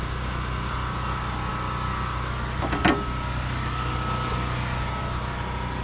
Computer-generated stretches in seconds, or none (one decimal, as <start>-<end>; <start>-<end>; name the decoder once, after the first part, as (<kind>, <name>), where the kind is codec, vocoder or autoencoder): none